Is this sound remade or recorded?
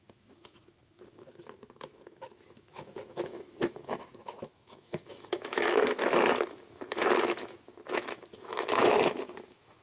remade